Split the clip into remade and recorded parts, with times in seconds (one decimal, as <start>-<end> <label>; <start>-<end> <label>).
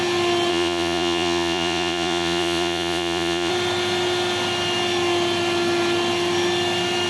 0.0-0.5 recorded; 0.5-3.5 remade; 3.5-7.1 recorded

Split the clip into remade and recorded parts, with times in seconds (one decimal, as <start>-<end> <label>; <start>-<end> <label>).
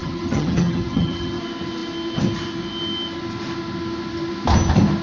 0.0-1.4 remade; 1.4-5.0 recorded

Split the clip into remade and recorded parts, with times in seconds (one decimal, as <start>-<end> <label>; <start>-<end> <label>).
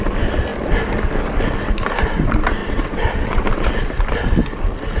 0.0-2.6 recorded; 2.6-3.4 remade; 3.4-5.0 recorded